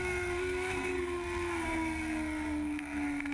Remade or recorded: remade